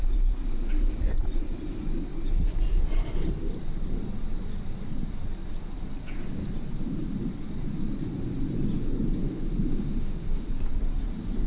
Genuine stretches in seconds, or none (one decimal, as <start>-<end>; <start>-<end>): 0.0-9.2; 10.5-11.5